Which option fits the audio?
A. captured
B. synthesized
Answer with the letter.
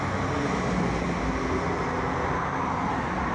A